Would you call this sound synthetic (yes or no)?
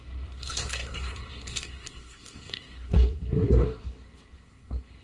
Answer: yes